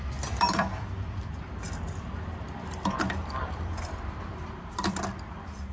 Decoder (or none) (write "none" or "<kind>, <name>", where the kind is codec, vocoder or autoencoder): vocoder, BigVGAN v2